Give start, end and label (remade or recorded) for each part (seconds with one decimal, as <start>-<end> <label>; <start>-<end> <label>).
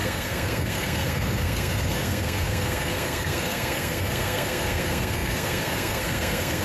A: 0.0-6.6 remade